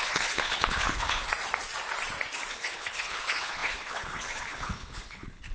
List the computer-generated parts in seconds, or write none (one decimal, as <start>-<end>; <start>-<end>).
0.0-1.3; 2.5-5.5